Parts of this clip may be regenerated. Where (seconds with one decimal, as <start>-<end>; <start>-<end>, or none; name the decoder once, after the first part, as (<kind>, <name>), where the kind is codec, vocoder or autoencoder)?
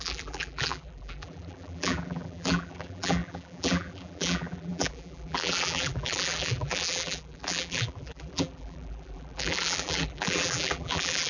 0.0-11.3 (vocoder, BigVGAN v2)